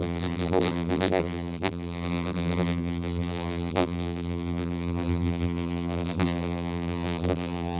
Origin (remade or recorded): remade